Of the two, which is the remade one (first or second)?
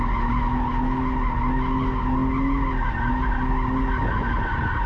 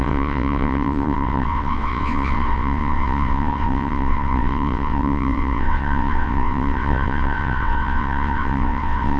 second